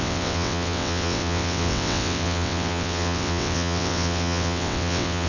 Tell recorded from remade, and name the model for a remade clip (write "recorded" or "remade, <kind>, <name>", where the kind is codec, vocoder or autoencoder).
remade, vocoder, WaveNeXt